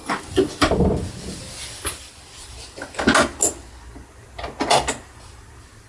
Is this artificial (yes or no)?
no